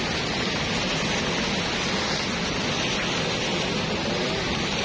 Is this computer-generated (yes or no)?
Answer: no